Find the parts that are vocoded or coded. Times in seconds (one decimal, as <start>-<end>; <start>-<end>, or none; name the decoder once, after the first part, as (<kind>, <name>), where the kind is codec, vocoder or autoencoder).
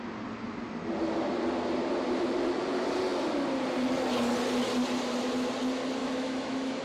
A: 6.0-6.8 (autoencoder, DAC-VAE)